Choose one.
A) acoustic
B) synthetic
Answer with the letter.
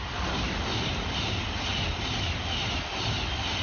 A